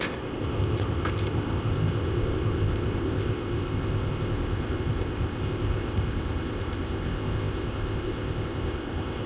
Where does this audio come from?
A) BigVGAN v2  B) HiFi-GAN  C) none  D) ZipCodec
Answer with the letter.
D